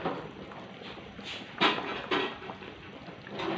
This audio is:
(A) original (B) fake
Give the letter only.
A